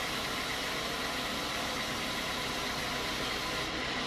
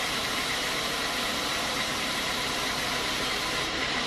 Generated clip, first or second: second